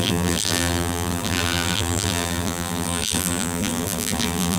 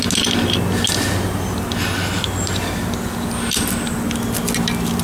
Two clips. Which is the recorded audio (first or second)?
second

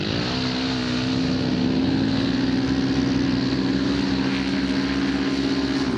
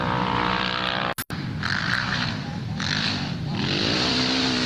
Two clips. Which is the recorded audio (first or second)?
first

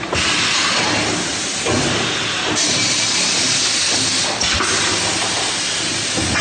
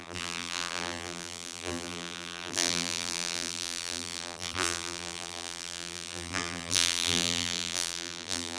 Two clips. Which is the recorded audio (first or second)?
first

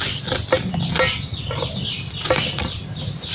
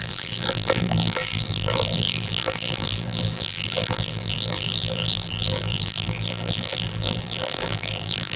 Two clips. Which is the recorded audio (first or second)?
first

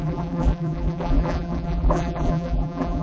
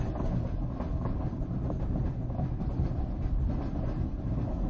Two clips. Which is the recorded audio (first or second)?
second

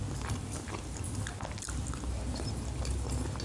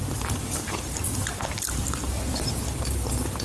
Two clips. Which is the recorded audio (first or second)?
first